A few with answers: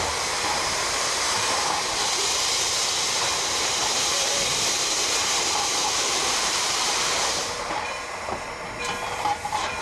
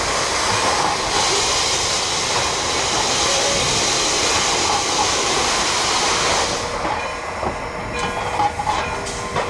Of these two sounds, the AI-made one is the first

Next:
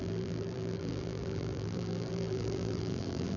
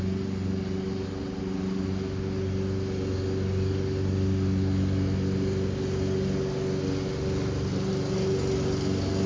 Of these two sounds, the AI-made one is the first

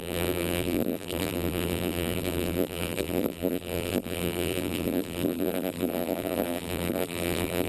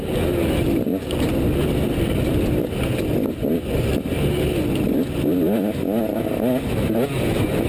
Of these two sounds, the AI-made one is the first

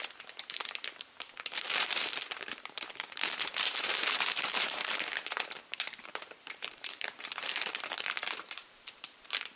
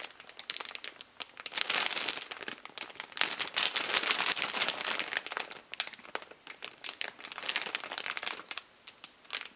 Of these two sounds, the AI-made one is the first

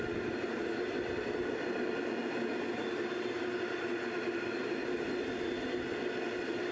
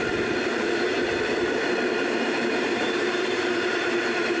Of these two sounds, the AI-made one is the second